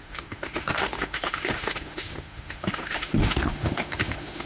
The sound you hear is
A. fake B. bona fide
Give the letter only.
A